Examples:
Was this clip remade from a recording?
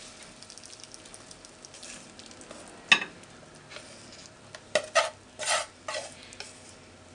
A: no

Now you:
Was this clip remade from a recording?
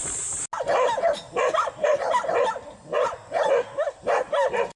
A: no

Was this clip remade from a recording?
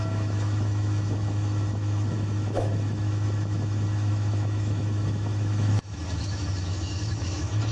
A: yes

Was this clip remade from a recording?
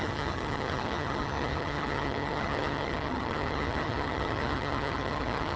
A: yes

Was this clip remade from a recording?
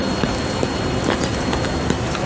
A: no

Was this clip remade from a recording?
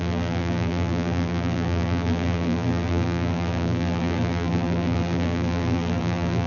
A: yes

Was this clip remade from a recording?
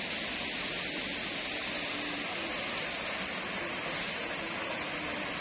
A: no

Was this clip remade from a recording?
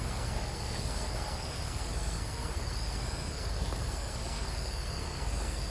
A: yes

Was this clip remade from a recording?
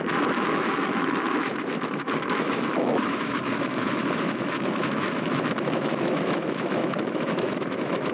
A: yes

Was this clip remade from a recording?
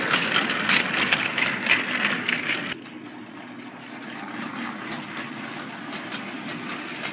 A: no